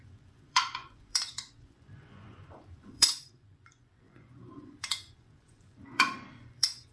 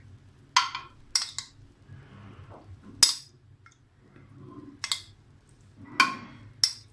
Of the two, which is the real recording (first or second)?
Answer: second